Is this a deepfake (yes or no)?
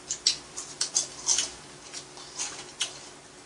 no